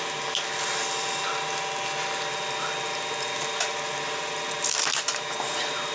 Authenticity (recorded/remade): recorded